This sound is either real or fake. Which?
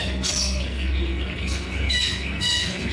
fake